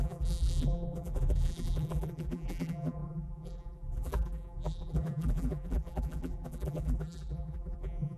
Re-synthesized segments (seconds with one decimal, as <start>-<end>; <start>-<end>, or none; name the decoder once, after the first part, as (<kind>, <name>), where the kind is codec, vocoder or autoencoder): 0.0-8.2 (vocoder, BigVGAN v2)